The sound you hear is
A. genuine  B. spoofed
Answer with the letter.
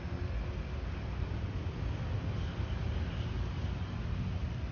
A